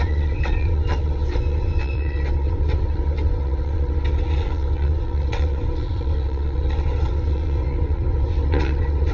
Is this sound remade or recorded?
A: remade